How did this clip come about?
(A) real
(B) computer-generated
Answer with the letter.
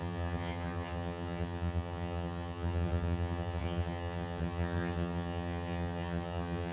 B